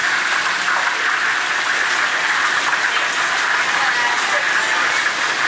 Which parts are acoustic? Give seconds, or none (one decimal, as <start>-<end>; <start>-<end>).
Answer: 1.2-5.5